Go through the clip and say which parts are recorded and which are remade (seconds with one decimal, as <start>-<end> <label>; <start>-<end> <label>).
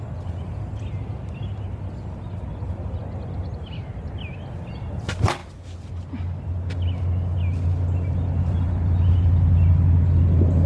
0.0-10.7 recorded